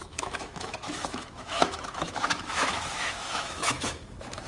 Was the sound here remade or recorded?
remade